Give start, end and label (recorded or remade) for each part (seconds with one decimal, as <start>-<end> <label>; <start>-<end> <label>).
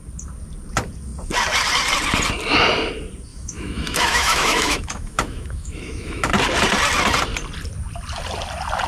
0.0-3.3 recorded; 3.3-6.3 remade; 6.3-8.9 recorded